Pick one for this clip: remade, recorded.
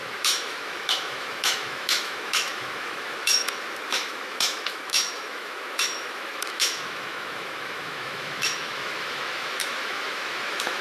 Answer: remade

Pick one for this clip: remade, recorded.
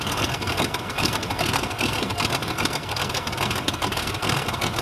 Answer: remade